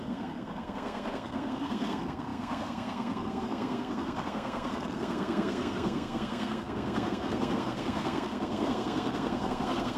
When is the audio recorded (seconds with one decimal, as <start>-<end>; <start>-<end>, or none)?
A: none

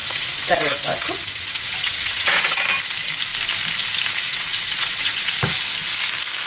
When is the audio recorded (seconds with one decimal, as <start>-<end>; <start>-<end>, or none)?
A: 2.6-4.3; 5.3-6.5